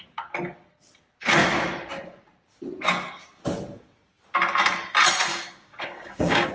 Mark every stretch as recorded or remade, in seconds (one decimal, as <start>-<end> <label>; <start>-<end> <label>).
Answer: 0.0-5.3 recorded; 5.3-6.5 remade